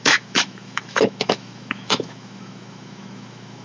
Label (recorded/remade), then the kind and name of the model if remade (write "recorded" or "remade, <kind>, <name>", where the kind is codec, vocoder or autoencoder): remade, autoencoder, DAC-VAE